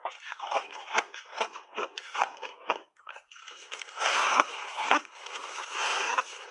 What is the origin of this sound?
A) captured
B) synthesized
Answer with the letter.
B